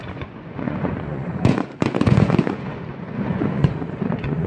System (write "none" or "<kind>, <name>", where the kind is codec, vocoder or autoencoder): vocoder, Vocos